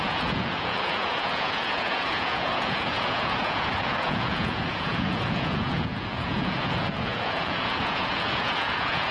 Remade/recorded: remade